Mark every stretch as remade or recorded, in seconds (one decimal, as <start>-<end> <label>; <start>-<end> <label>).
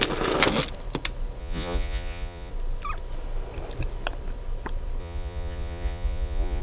0.0-1.4 recorded; 1.4-2.5 remade; 2.5-5.0 recorded; 5.0-6.6 remade